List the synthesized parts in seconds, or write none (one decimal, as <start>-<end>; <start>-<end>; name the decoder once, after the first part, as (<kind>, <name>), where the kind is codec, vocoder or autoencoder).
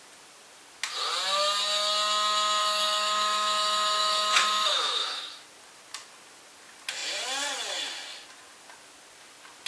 2.6-5.2 (autoencoder, DAC-VAE)